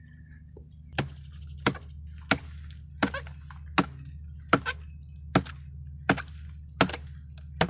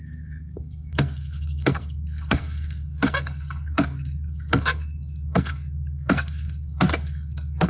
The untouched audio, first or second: first